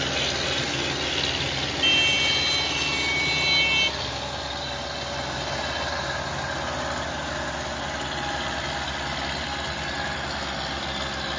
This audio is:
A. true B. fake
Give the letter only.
A